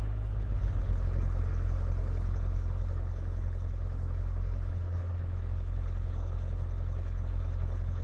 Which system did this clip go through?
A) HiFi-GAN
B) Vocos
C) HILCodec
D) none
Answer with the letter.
C